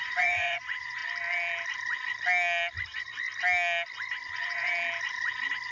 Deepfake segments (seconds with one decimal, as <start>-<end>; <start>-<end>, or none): 0.0-1.0; 4.3-4.7

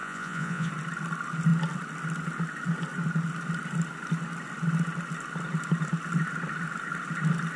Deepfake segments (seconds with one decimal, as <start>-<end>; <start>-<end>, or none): 0.0-0.7

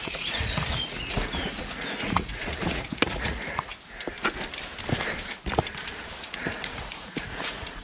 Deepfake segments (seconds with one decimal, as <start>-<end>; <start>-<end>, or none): 0.0-3.7; 6.2-7.8

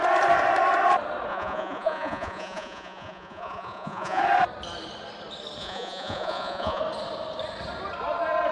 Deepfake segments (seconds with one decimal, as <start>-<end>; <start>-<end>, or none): 1.3-4.2; 5.6-6.8

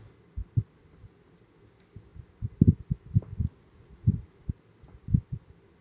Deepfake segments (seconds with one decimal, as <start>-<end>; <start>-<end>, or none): 3.3-4.5